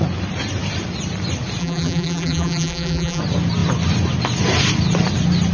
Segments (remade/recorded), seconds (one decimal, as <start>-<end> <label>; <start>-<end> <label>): 0.0-1.6 recorded; 1.6-3.2 remade; 3.2-5.5 recorded